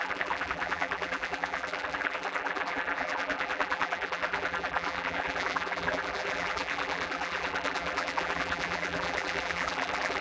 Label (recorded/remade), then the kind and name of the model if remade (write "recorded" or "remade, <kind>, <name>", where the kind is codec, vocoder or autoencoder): remade, vocoder, BigVGAN v2